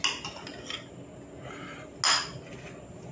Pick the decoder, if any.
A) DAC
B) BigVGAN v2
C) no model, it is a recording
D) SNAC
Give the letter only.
C